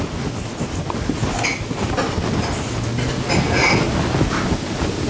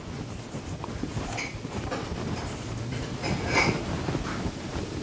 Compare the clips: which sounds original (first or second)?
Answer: first